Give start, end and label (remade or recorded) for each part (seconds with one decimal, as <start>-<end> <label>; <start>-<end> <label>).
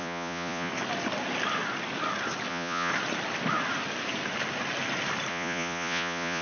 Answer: 0.0-0.7 remade; 0.7-2.5 recorded; 2.5-2.9 remade; 2.9-5.3 recorded; 5.3-6.4 remade